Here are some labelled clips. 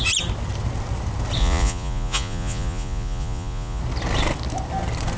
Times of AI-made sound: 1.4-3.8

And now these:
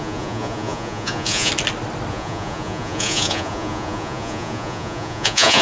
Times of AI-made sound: 0.0-1.5; 2.1-5.6

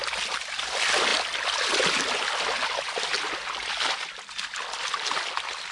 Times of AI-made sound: none

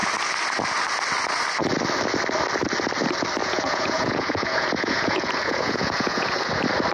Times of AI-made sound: 3.4-6.5

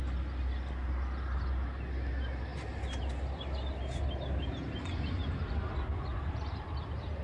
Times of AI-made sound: none